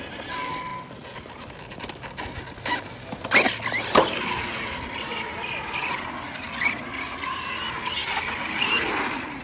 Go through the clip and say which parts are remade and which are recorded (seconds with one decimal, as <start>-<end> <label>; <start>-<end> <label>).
0.0-9.4 recorded